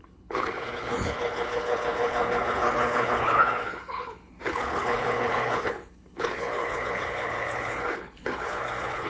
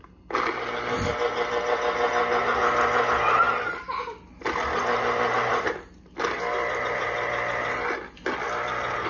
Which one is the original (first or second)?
second